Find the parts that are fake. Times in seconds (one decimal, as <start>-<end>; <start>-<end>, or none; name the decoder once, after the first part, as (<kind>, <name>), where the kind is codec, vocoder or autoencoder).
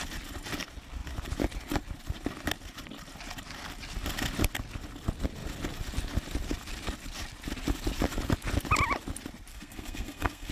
9.5-10.5 (codec, SNAC)